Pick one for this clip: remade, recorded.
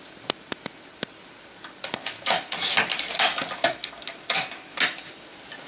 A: recorded